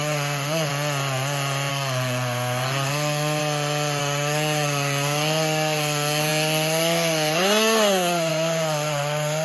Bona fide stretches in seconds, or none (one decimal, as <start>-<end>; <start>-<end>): 0.7-1.7; 3.4-4.0